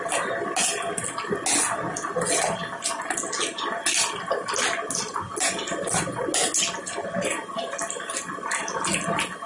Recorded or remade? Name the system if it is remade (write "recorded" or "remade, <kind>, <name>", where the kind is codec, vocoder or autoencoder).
recorded